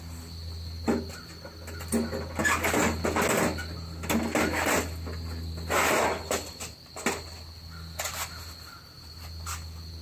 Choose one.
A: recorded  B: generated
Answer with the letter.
A